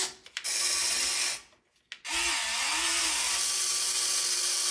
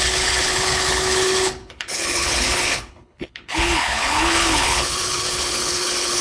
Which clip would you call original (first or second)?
first